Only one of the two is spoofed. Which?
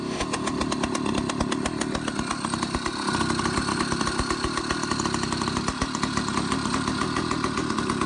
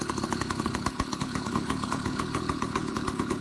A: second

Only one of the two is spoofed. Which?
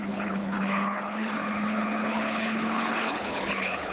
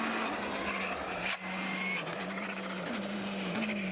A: first